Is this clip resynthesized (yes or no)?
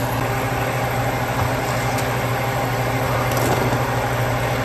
no